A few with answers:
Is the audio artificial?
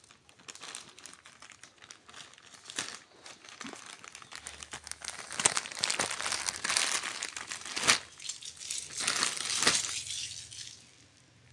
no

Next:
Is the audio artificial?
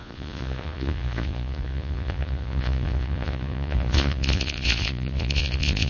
yes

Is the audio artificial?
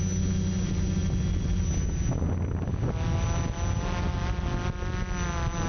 no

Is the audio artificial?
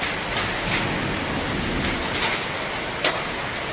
no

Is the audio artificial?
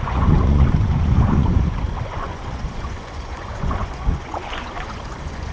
yes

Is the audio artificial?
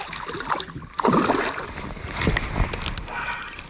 no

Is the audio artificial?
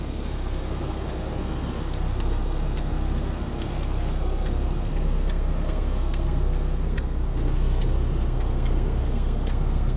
yes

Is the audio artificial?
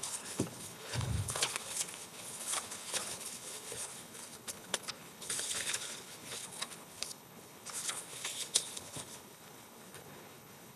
yes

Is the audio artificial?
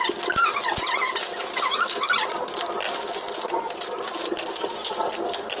no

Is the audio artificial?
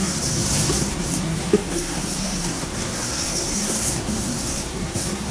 yes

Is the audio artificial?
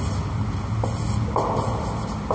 no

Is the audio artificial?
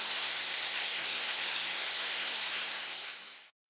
yes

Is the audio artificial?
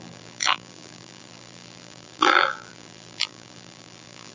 yes